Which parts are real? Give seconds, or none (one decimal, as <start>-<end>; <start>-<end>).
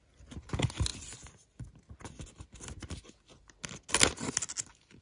0.0-5.0